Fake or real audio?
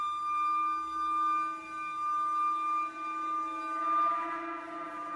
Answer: real